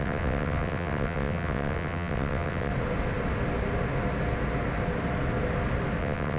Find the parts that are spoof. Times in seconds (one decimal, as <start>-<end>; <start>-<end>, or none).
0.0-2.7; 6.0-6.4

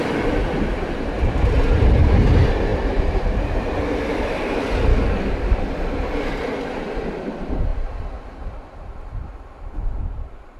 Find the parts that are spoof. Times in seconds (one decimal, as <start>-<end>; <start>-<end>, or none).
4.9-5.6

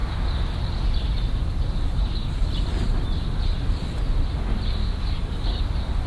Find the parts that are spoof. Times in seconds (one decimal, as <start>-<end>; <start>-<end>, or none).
4.8-5.6